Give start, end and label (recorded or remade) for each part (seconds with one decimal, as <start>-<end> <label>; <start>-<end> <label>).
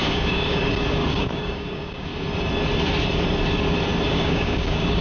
0.0-2.1 remade; 2.1-4.1 recorded; 4.1-5.0 remade